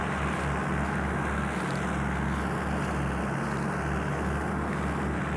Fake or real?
real